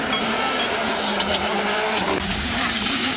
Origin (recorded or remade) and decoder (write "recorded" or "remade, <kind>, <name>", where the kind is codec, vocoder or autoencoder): remade, vocoder, BigVGAN v2